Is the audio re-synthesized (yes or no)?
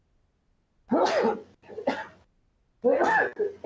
no